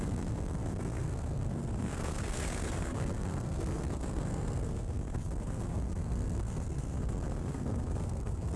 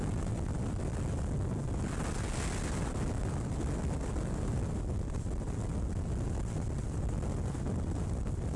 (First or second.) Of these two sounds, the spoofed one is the first